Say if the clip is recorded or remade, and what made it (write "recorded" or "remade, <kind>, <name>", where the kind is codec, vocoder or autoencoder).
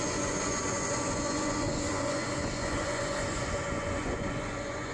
remade, vocoder, Vocos